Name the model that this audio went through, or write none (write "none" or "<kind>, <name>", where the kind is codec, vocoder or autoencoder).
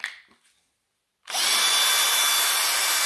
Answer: none